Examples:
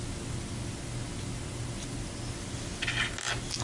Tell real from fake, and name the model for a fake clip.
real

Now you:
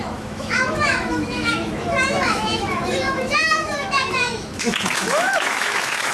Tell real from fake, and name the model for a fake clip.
fake, autoencoder, DAC-VAE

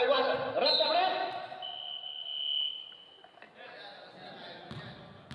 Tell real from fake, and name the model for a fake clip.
real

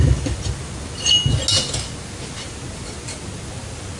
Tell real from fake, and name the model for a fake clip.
real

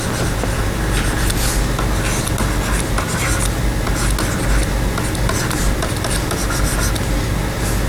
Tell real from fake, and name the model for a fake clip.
real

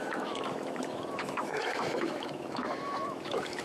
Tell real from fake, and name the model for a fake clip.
fake, autoencoder, DAC-VAE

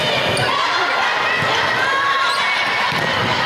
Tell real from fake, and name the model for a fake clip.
real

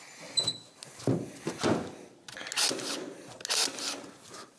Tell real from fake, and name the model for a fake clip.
real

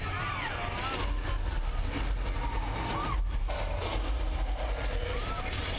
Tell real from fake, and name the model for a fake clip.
real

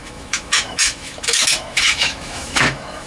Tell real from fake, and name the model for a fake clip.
fake, autoencoder, DAC-VAE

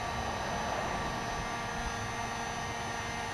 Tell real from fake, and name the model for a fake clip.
real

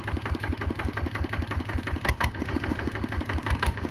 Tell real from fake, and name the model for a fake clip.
fake, autoencoder, DAC-VAE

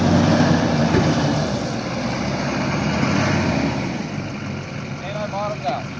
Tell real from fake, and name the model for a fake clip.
real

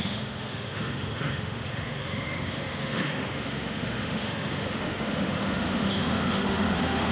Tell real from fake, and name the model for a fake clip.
fake, autoencoder, DAC-VAE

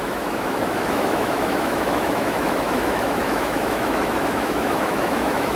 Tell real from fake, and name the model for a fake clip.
fake, autoencoder, DAC-VAE